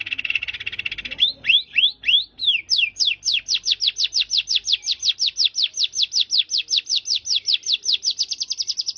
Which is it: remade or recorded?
recorded